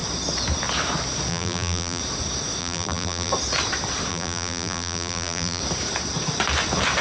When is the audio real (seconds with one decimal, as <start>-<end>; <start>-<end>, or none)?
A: 0.0-1.3; 2.0-2.6; 3.3-4.1; 5.6-7.0